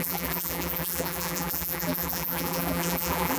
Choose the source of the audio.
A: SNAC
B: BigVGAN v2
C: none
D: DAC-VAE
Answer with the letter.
B